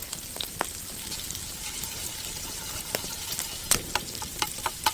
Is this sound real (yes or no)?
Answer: no